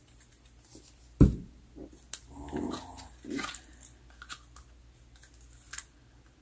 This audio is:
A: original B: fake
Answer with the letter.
A